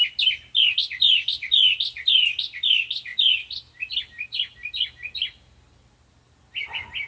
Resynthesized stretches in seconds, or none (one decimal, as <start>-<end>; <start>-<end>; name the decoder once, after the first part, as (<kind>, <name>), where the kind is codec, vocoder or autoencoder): none